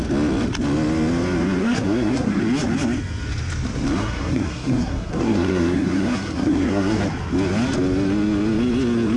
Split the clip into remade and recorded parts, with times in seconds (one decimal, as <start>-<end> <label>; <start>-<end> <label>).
0.0-1.6 recorded; 1.6-2.4 remade; 2.4-4.0 recorded; 4.0-7.0 remade; 7.0-9.2 recorded